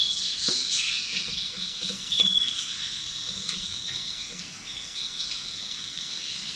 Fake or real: fake